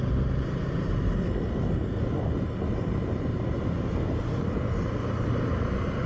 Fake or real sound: real